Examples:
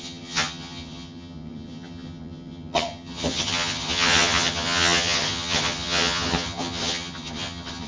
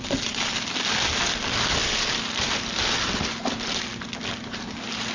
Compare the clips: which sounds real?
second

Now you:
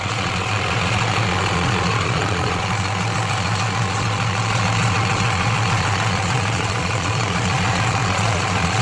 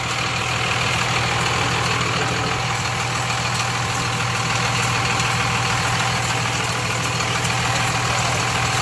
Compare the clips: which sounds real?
second